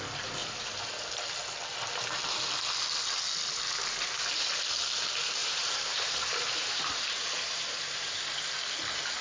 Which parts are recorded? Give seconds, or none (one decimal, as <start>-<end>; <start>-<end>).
0.0-0.4; 0.9-5.4; 8.2-9.2